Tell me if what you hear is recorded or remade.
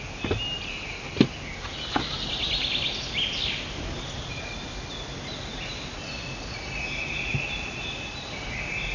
recorded